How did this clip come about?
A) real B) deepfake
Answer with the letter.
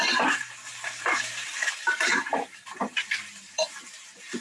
B